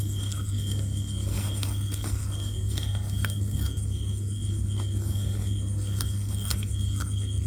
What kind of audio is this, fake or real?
fake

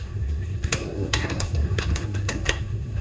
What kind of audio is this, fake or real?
fake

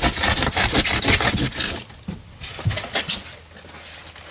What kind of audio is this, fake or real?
real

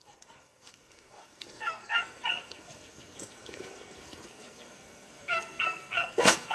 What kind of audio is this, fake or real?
fake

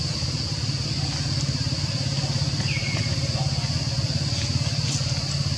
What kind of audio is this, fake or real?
real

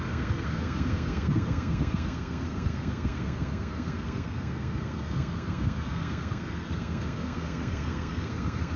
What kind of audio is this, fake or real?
fake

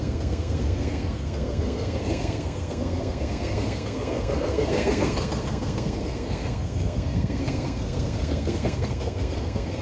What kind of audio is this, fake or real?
fake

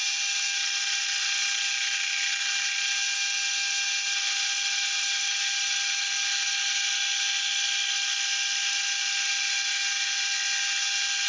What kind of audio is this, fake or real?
real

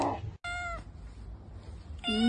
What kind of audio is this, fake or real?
real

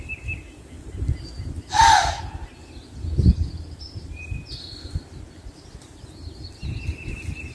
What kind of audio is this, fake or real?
real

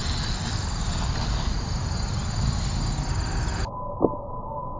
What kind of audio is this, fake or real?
real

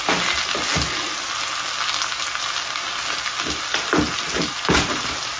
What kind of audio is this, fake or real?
real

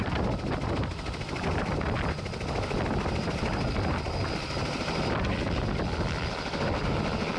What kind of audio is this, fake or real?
real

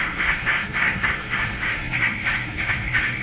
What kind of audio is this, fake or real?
fake